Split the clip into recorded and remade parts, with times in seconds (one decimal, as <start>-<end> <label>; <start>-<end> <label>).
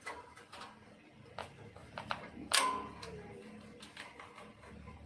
0.0-5.1 recorded